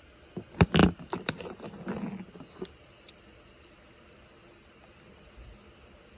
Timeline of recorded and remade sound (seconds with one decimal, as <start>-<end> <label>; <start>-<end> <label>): 0.0-6.2 recorded